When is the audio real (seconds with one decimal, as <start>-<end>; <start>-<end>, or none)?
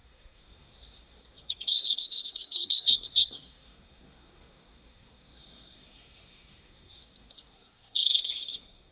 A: none